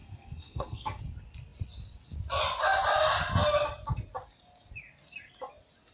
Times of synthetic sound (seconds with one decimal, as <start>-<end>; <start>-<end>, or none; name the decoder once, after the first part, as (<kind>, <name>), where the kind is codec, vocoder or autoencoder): 0.0-1.0 (codec, SNAC)